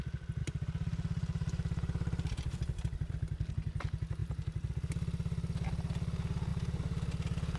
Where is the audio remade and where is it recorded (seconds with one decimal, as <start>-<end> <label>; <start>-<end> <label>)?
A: 0.0-0.4 recorded; 0.4-3.1 remade; 3.1-4.2 recorded; 4.2-4.7 remade; 4.7-6.5 recorded; 6.5-7.6 remade